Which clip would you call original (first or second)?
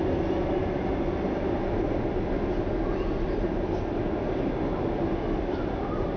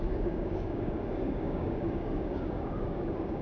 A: first